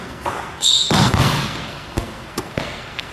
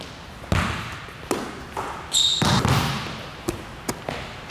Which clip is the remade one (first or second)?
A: first